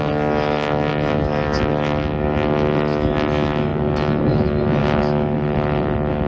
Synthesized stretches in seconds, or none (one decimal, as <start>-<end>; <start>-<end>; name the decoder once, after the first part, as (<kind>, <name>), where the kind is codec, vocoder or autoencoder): 4.8-6.3 (autoencoder, DAC-VAE)

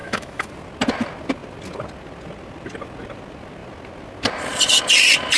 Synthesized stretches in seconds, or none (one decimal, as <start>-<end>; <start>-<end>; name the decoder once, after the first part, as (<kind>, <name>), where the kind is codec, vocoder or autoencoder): 0.0-0.5 (autoencoder, DAC-VAE)